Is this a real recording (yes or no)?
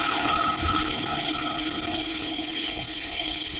no